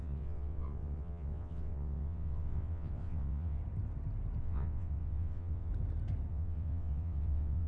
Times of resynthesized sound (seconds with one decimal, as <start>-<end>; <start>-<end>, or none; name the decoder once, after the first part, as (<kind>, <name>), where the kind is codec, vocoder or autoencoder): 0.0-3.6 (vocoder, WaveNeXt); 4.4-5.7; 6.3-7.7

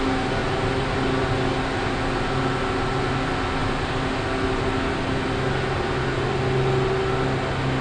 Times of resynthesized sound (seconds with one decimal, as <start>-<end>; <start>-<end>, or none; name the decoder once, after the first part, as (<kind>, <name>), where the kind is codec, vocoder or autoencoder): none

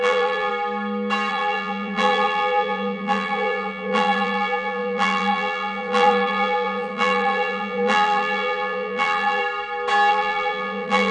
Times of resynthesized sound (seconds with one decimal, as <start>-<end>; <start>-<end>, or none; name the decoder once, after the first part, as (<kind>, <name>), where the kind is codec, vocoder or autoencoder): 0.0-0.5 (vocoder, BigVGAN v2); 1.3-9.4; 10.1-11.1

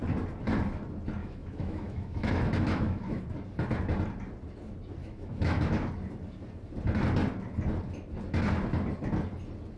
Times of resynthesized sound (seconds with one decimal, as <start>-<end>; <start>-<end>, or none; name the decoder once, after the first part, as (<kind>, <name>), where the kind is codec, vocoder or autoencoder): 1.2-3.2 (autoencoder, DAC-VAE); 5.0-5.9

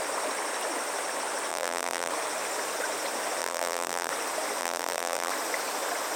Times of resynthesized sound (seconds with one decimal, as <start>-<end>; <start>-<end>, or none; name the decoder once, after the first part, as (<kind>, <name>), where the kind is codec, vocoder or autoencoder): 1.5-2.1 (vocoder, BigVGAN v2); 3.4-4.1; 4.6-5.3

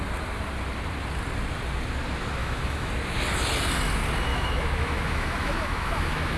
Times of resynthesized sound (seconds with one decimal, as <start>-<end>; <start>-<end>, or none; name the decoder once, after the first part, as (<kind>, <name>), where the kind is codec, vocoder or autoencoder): 2.4-2.9 (autoencoder, DAC-VAE); 4.3-6.4